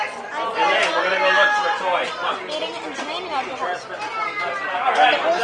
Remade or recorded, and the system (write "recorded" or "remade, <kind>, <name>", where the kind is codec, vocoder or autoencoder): recorded